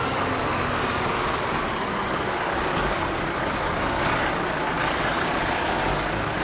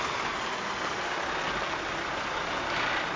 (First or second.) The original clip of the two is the second